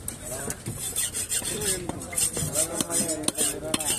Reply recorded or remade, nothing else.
recorded